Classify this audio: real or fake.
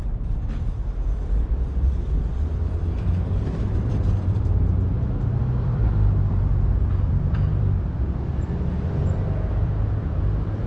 fake